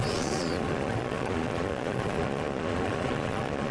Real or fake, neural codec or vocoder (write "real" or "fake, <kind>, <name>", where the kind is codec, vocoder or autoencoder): fake, vocoder, Vocos